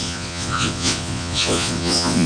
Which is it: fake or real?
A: fake